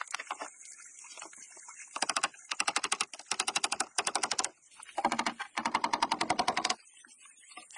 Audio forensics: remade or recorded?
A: remade